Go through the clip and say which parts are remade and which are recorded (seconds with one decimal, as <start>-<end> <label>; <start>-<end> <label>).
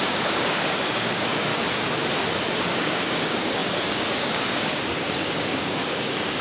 0.0-1.5 remade; 1.5-2.6 recorded; 2.6-6.4 remade